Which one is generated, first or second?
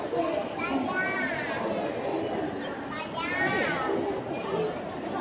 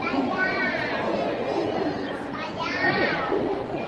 second